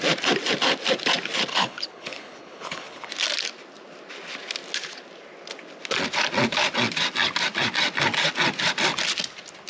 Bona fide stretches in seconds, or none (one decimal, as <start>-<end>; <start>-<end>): 0.0-1.5; 3.1-9.7

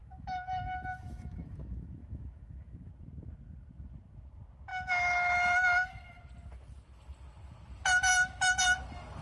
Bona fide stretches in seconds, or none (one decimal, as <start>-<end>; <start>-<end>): 2.9-4.7; 6.1-8.1; 8.6-9.2

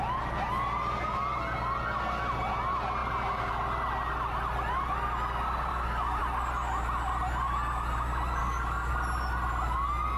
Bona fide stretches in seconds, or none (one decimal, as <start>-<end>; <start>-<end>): 0.0-5.7; 6.2-8.4; 8.9-10.2

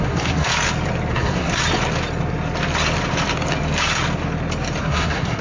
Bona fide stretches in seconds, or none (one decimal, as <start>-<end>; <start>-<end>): 0.5-1.1; 1.6-4.8

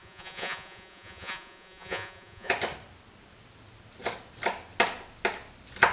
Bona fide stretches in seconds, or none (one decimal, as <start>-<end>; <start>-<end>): 2.5-5.9

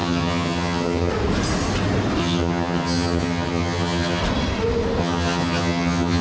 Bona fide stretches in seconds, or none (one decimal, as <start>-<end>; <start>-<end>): 1.1-2.2; 4.2-5.0

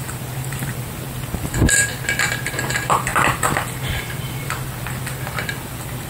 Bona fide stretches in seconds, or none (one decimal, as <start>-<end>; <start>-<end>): 1.9-2.5; 3.1-6.1

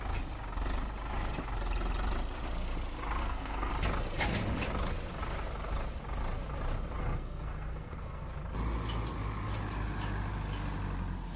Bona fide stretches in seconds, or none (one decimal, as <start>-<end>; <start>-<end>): 0.0-3.2; 3.7-7.0; 8.3-11.4